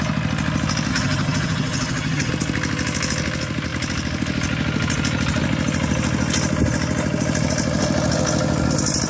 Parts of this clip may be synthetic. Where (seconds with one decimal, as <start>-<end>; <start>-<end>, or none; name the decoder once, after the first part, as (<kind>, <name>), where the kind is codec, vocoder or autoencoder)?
0.9-2.3 (vocoder, HiFi-GAN)